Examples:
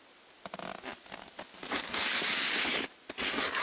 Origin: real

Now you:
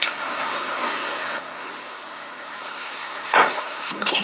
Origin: fake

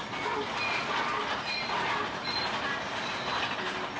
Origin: real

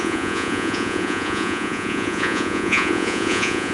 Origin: fake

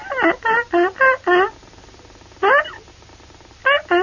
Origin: real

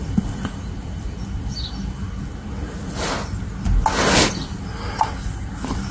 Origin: real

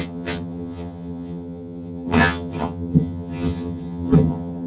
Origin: fake